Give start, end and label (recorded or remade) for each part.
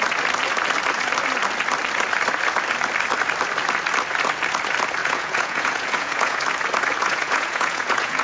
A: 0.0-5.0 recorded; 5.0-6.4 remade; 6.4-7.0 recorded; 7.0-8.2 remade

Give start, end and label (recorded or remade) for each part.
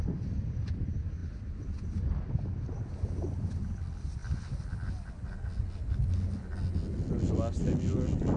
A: 0.0-8.4 recorded